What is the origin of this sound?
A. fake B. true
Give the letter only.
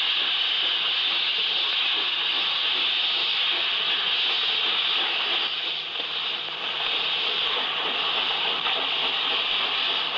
B